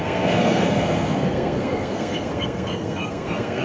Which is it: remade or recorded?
remade